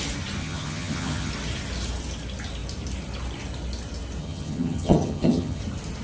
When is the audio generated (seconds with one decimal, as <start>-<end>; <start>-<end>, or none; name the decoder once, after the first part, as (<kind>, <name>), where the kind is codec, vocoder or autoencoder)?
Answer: 0.4-1.3 (vocoder, HiFi-GAN); 4.2-5.6